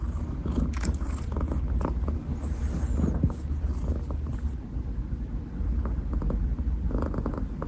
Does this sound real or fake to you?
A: real